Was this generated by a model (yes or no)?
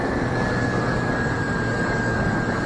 yes